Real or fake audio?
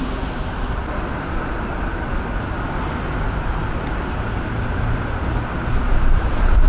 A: real